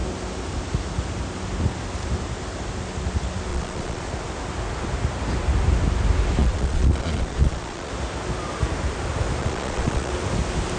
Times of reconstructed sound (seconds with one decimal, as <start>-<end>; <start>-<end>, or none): 3.5-4.1; 6.4-7.9; 9.4-10.1